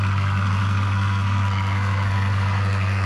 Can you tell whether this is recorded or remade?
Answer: remade